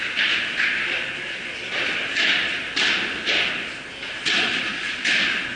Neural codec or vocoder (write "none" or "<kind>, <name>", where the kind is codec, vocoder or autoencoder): none